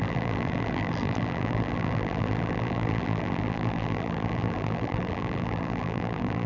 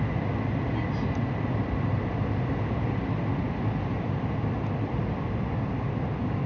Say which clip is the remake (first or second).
first